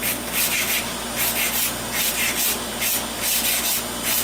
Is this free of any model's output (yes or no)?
yes